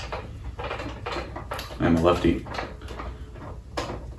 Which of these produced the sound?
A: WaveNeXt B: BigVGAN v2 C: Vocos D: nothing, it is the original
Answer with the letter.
D